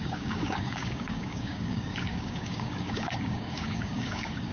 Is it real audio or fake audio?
fake